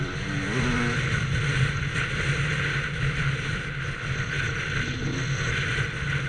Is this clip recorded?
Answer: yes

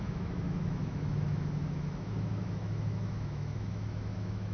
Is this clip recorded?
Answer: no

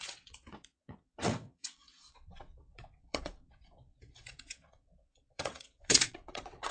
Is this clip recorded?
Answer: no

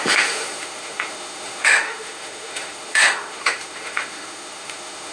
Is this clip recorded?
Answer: no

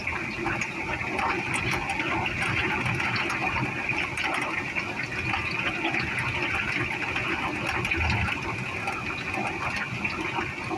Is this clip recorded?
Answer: yes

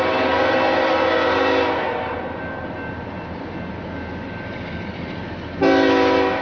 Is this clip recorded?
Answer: yes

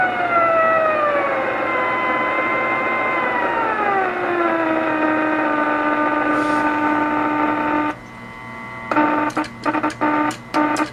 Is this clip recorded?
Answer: yes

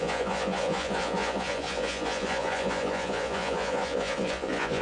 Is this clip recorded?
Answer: no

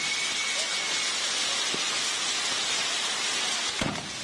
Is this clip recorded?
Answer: yes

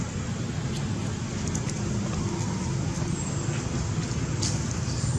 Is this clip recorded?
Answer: yes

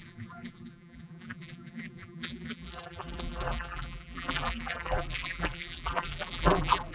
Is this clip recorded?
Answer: no